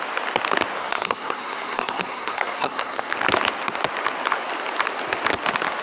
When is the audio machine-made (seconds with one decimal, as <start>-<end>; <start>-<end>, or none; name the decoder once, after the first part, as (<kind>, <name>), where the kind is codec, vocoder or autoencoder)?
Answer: 0.8-3.1 (codec, SNAC)